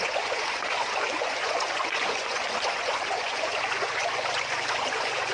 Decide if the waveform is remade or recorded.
remade